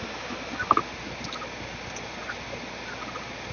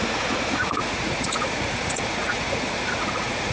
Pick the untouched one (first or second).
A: first